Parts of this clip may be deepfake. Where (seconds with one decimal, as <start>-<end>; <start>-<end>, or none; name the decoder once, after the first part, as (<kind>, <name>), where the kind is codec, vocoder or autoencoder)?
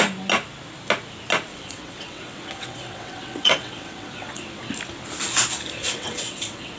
1.5-4.6 (vocoder, WaveNeXt); 5.8-6.8